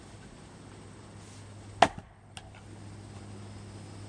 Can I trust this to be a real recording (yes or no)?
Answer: yes